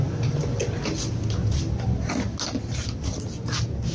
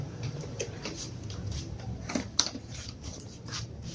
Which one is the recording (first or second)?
first